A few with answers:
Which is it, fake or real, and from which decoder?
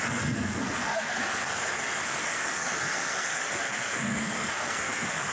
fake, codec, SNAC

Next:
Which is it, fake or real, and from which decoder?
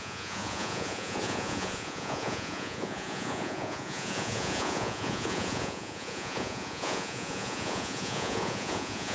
fake, vocoder, Vocos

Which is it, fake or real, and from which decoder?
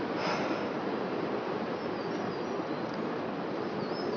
real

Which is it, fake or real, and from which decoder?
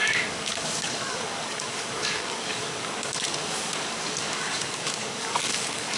fake, codec, DAC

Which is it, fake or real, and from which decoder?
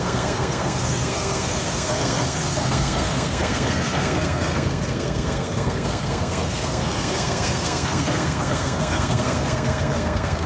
fake, codec, SNAC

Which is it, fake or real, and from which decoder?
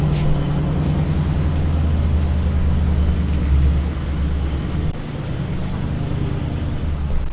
real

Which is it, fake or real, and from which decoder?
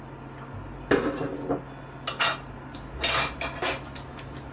real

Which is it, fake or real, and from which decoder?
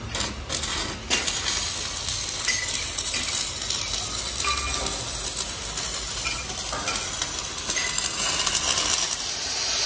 real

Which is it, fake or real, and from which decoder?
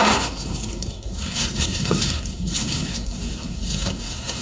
fake, codec, SNAC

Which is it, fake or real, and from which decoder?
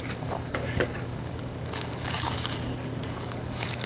fake, codec, DAC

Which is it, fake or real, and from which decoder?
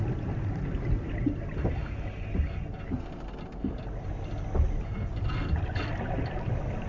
real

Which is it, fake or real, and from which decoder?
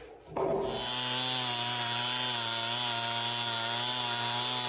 real